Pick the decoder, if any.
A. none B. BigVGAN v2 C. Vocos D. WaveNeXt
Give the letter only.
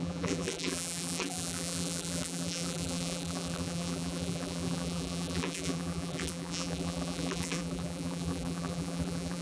B